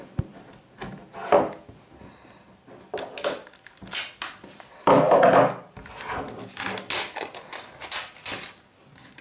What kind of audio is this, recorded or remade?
recorded